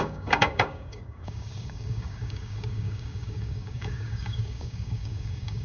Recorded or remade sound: remade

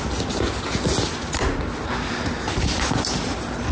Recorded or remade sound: recorded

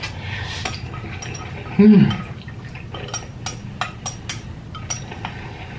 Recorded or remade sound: recorded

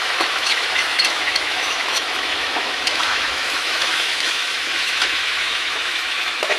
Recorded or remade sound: remade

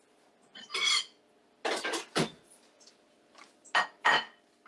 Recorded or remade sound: recorded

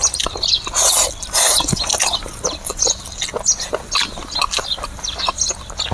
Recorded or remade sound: recorded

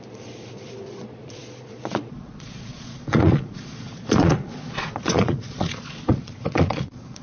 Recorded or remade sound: remade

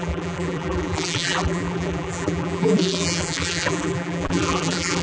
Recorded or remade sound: remade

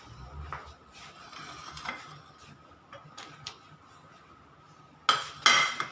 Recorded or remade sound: recorded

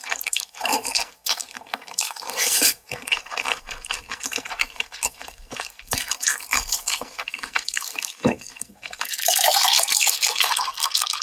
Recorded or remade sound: remade